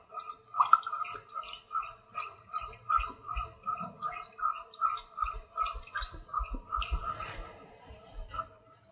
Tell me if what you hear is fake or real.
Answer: fake